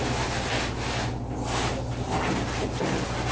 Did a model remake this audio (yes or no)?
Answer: no